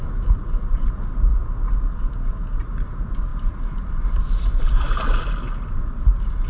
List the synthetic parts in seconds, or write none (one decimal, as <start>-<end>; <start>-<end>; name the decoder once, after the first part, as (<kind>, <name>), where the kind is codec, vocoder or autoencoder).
3.3-4.7 (vocoder, BigVGAN v2)